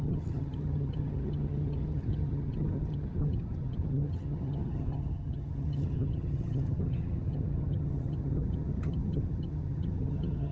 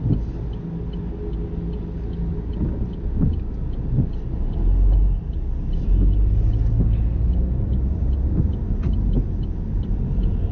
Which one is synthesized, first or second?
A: first